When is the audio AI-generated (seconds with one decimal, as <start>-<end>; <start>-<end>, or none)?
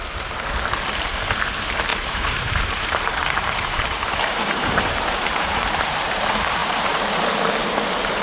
1.9-5.7; 6.6-7.1